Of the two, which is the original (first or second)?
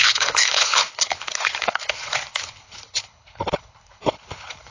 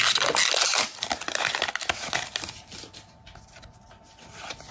second